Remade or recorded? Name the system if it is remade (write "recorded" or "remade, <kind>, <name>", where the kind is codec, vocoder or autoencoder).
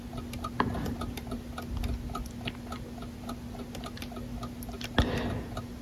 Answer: recorded